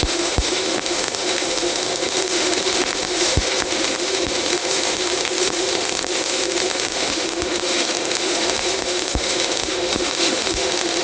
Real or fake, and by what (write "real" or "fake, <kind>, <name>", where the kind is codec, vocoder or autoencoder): fake, autoencoder, DAC-VAE